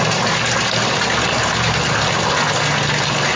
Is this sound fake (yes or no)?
no